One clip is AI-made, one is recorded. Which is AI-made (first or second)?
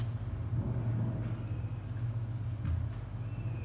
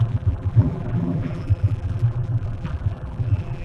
second